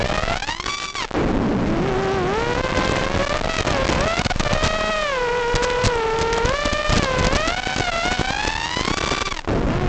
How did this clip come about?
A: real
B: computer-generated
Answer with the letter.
A